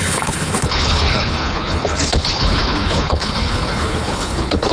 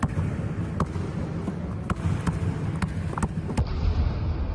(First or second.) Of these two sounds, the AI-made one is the first